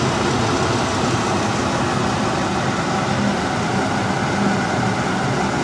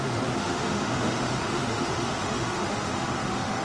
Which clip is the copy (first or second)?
second